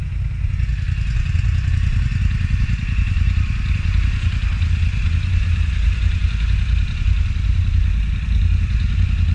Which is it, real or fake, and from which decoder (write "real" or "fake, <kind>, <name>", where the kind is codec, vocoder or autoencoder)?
real